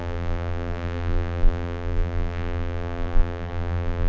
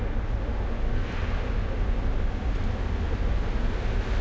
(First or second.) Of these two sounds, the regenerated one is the first